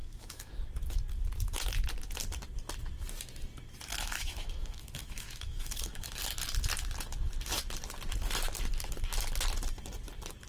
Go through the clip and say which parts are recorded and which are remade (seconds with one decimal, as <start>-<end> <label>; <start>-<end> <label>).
0.0-0.5 remade; 0.5-3.9 recorded; 3.9-6.2 remade; 6.2-10.5 recorded